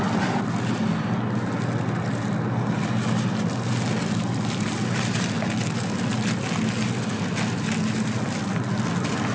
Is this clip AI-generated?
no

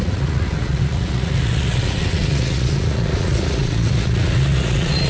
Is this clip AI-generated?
yes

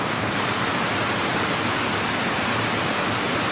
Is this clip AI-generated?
no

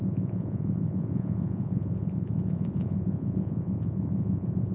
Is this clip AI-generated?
yes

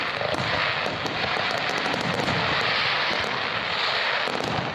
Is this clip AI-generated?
no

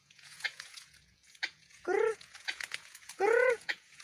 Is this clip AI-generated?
yes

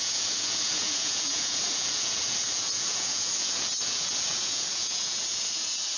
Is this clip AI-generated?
yes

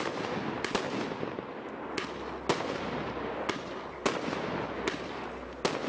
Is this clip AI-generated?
no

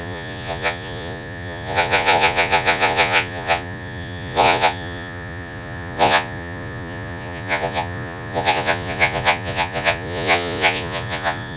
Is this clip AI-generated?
yes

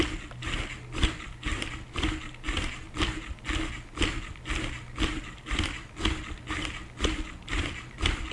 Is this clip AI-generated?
no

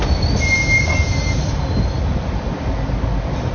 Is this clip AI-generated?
no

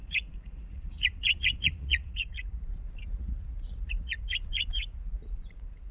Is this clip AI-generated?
yes